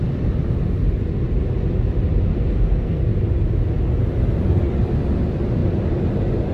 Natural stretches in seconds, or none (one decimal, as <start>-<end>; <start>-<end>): 0.0-2.3; 3.0-6.5